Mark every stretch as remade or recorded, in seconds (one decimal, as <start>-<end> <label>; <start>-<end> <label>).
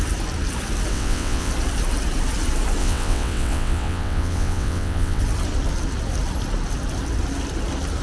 0.0-0.9 recorded; 0.9-1.5 remade; 1.5-2.8 recorded; 2.8-5.2 remade; 5.2-8.0 recorded